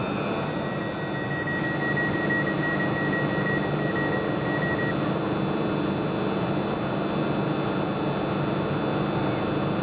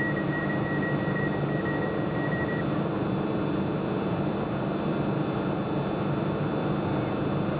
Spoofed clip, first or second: second